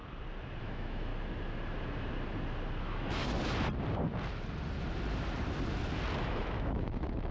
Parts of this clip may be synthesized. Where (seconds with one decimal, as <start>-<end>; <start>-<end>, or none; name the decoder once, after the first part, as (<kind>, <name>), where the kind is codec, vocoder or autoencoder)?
0.6-1.1 (autoencoder, DAC-VAE); 2.8-3.2; 6.2-7.3